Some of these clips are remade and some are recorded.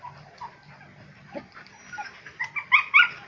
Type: recorded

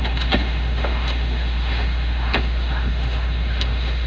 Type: remade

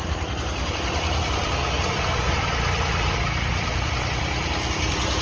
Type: remade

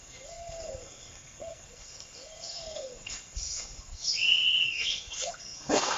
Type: remade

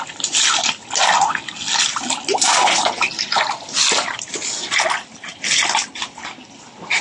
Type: recorded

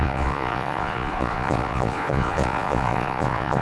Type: remade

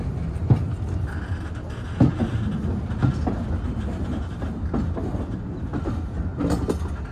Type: recorded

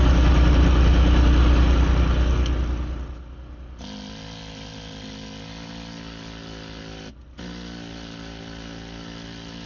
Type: recorded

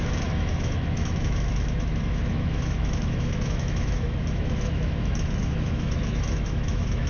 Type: remade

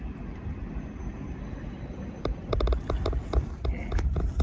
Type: recorded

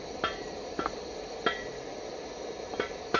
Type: recorded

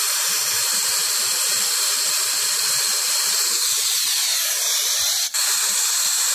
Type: remade